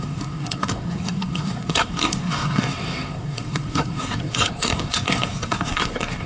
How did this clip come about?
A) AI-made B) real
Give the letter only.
A